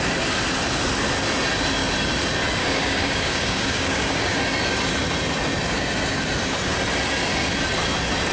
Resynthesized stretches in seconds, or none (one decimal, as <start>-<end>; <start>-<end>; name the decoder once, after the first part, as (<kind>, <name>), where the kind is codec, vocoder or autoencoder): 2.6-4.4 (codec, DAC)